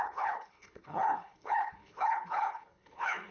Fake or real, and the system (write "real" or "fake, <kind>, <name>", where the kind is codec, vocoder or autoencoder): fake, codec, HILCodec